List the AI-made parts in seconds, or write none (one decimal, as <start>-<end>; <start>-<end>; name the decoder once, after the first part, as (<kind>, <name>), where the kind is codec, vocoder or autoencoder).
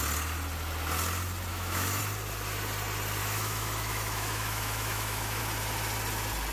1.5-2.0 (autoencoder, DAC-VAE); 3.2-5.4